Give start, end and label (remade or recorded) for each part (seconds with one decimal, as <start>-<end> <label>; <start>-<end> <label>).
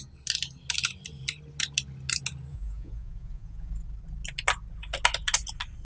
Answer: 0.0-2.5 recorded; 2.5-3.7 remade; 3.7-5.8 recorded